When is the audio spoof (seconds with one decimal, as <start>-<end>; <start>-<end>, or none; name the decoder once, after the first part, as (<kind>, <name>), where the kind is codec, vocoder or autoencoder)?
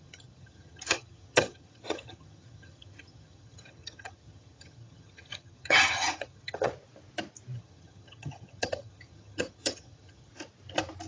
0.0-6.7 (vocoder, HiFi-GAN); 7.6-10.3